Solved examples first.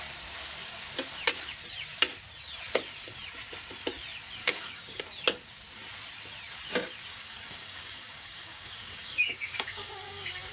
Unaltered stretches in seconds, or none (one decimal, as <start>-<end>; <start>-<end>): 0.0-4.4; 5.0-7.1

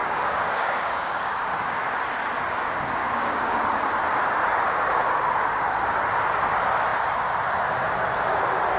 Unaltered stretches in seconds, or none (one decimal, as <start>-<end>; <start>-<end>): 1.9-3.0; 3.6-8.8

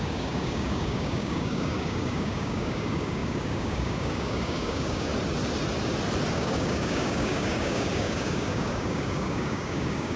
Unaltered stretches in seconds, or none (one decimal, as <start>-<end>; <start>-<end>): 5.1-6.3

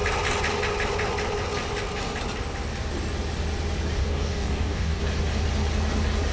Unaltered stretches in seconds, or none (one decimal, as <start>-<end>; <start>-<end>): 0.0-4.0; 5.0-6.3

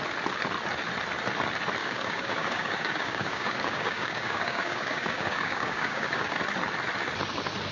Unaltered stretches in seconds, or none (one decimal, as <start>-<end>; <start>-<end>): 0.0-1.8; 6.4-7.7

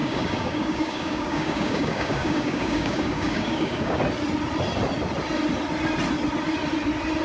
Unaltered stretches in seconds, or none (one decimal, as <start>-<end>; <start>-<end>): 4.0-7.2

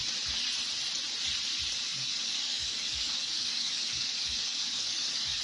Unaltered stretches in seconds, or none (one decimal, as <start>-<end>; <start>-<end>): 0.0-1.9

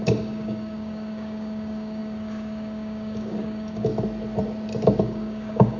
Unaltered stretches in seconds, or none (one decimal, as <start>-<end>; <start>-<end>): 3.9-5.0